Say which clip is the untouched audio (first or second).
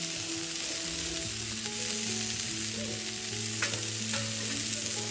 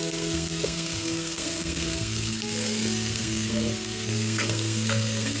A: first